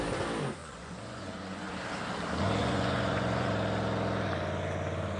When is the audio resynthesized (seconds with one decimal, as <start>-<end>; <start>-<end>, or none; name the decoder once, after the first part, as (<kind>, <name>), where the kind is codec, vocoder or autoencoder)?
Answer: 0.6-1.7 (vocoder, Vocos); 2.6-3.5